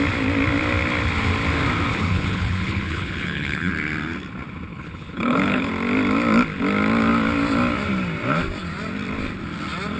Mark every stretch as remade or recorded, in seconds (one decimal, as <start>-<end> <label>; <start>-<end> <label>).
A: 0.0-1.9 recorded; 1.9-3.7 remade; 3.7-4.7 recorded; 4.7-5.7 remade; 5.7-10.0 recorded